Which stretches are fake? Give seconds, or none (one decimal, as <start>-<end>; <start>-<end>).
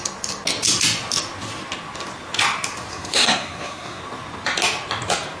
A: 2.9-4.0